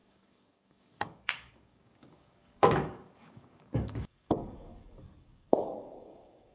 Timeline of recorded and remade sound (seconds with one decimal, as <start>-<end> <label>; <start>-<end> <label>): 0.0-6.5 remade